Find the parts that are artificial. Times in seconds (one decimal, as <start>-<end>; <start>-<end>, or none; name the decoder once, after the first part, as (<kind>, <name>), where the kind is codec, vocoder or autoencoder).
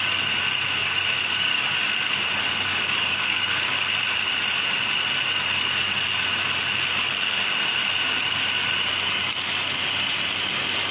0.8-1.8 (codec, DAC); 2.7-3.8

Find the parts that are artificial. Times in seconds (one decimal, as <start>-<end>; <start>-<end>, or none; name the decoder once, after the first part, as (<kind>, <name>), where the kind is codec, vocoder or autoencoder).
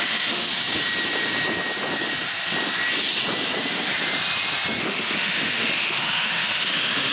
0.0-0.5 (autoencoder, DAC-VAE); 4.8-7.1